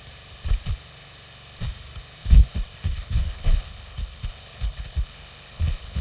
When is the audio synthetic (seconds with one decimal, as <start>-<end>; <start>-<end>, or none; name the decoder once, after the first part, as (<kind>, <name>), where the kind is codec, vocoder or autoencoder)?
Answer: 2.2-6.0 (codec, HILCodec)